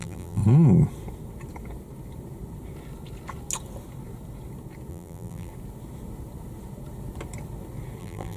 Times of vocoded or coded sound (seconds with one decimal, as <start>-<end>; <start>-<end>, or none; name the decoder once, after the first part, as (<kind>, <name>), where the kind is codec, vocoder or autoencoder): 0.0-0.4 (vocoder, BigVGAN v2); 4.9-5.5; 8.0-8.4